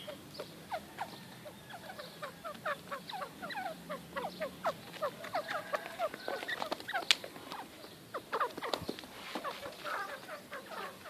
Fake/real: real